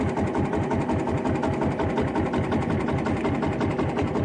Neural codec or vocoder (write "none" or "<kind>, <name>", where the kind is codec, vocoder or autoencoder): none